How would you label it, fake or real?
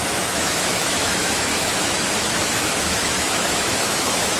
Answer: fake